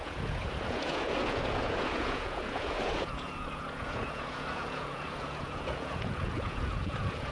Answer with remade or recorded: remade